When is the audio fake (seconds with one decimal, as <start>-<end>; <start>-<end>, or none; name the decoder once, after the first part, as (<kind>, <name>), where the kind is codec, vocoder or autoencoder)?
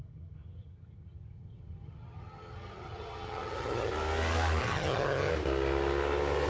0.0-3.9 (vocoder, HiFi-GAN); 4.6-5.3